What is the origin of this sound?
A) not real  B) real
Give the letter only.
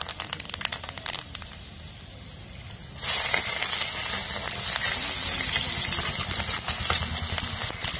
B